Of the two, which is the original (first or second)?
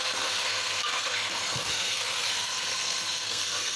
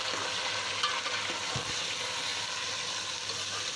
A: second